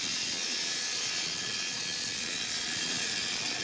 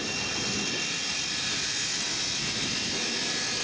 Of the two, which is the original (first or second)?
second